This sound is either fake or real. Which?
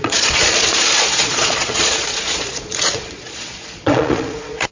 fake